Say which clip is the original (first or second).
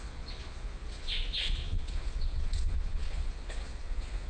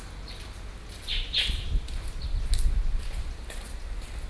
second